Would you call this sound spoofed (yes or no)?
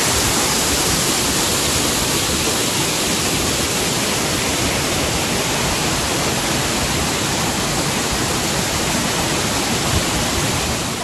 no